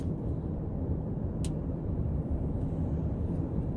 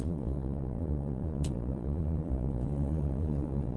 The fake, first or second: second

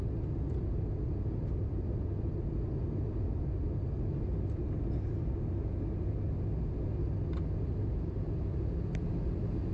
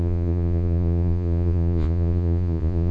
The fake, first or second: second